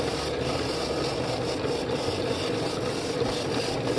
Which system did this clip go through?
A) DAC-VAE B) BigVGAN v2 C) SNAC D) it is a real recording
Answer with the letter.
B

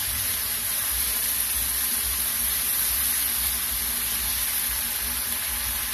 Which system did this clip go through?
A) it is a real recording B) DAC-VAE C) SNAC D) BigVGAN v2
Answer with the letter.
A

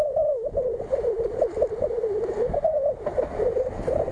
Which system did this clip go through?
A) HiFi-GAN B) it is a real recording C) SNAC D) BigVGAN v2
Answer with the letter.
B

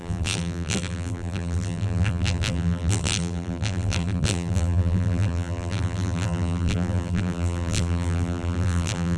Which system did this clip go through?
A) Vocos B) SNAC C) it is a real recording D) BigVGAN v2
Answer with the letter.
D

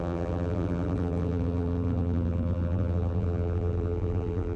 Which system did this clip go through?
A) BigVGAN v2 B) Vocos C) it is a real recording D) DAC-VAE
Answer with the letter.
A